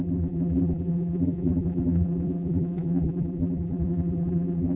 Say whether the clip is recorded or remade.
remade